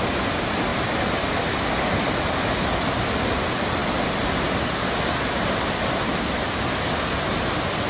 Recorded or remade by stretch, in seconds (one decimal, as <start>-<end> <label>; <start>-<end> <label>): 0.0-7.9 recorded